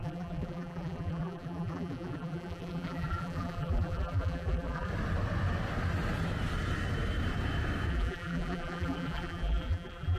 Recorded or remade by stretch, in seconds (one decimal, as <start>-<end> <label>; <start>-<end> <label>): 0.0-4.9 remade; 4.9-7.9 recorded; 7.9-10.2 remade